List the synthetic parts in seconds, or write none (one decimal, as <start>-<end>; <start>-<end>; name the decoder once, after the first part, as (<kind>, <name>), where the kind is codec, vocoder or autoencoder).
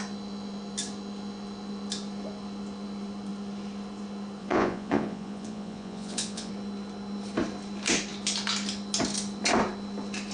4.4-6.5 (vocoder, Vocos)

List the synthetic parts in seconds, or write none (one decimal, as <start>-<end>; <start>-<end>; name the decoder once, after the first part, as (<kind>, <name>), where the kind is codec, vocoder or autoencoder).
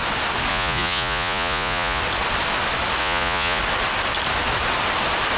0.5-2.0 (vocoder, Vocos); 3.0-3.6